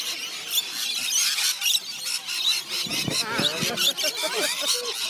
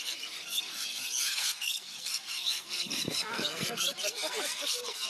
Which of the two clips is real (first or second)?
first